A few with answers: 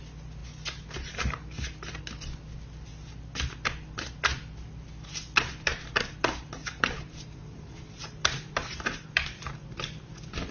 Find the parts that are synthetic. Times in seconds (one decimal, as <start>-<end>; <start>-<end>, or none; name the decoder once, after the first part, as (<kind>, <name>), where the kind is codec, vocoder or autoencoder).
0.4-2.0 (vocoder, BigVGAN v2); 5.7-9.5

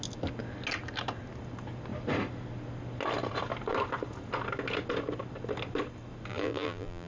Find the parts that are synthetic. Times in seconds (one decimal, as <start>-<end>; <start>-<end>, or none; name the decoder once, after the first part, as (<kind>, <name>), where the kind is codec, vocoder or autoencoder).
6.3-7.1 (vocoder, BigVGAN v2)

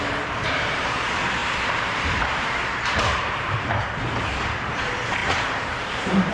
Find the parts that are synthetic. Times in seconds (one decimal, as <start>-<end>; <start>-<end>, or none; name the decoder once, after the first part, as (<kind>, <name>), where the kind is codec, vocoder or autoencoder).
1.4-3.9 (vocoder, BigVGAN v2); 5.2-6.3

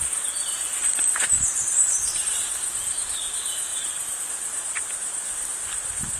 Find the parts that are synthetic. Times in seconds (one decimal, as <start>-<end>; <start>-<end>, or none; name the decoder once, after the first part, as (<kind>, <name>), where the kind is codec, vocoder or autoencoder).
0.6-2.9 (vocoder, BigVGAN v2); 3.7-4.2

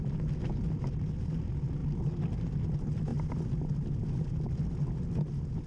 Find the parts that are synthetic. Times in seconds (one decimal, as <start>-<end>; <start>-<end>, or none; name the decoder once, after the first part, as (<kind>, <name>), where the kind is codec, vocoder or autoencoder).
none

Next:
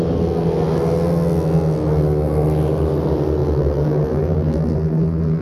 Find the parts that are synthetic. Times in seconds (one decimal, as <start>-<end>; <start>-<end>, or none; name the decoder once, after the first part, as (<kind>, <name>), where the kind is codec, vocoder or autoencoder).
3.4-5.4 (vocoder, BigVGAN v2)

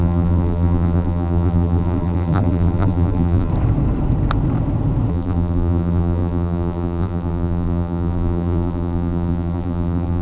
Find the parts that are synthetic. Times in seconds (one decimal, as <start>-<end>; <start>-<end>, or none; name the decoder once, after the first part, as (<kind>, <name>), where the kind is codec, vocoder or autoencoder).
0.0-3.5 (vocoder, BigVGAN v2); 5.1-10.2

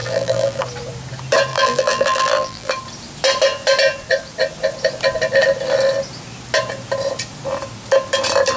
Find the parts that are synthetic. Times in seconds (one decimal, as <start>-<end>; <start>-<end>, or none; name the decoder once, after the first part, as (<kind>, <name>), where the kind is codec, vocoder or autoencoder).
0.0-0.6 (vocoder, BigVGAN v2); 1.5-2.7